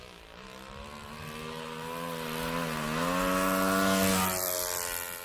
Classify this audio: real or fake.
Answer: real